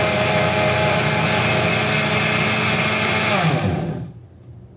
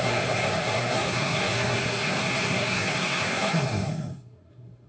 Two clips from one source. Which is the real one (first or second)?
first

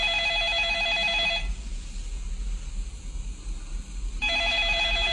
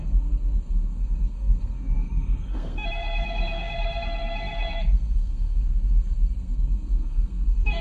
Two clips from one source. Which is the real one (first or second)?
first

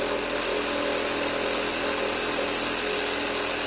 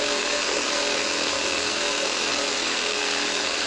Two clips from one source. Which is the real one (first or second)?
first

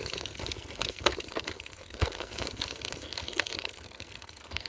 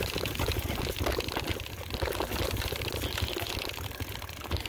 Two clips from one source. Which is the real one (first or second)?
second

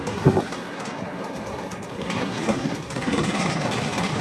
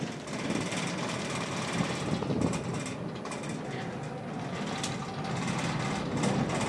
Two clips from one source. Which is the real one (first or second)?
second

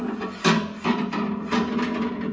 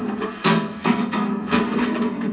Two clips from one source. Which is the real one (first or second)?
first